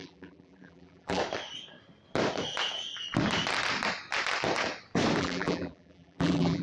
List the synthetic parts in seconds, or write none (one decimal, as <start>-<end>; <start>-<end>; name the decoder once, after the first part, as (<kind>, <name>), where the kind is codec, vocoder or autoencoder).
0.0-1.2 (vocoder, BigVGAN v2); 5.2-6.6